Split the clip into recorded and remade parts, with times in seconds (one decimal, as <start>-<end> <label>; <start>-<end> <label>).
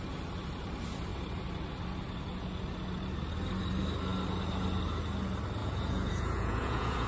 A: 0.0-5.6 recorded; 5.6-7.1 remade